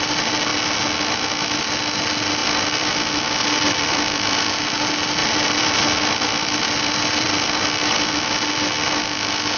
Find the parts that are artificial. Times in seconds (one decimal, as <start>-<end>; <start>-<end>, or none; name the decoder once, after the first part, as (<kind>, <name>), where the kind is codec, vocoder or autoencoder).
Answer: 2.4-2.9 (vocoder, BigVGAN v2); 3.4-4.5; 5.2-8.1